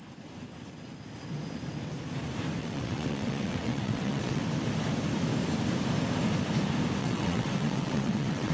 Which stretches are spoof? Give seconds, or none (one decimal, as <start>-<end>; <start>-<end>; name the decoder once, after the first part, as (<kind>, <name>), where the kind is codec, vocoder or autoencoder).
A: 2.6-4.4 (vocoder, WaveNeXt); 7.0-8.5